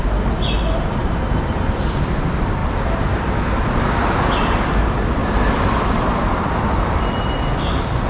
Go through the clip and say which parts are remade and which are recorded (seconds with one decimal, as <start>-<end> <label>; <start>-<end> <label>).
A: 0.0-5.2 recorded; 5.2-6.2 remade; 6.2-8.1 recorded